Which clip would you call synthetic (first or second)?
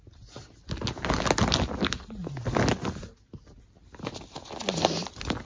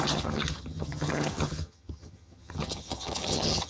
second